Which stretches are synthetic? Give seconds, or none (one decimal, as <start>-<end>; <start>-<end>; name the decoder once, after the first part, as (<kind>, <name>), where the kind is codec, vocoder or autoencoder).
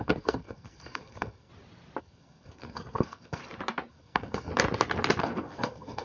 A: 0.0-1.5 (codec, SNAC); 2.0-3.4; 3.9-4.5; 5.2-6.0